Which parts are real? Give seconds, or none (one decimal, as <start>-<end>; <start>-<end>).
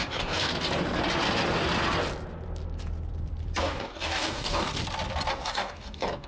0.5-3.6; 4.7-5.3